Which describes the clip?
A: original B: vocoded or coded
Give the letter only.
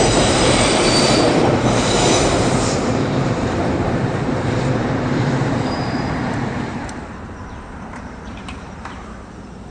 B